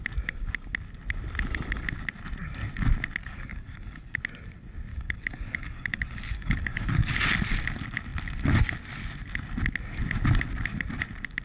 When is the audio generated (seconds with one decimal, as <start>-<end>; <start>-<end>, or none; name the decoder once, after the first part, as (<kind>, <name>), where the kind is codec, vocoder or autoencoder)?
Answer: 3.2-4.2 (codec, DAC); 4.9-7.1